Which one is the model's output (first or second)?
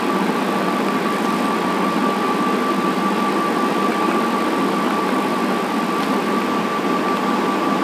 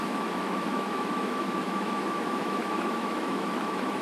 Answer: second